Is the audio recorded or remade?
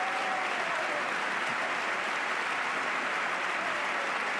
recorded